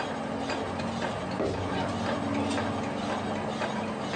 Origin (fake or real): real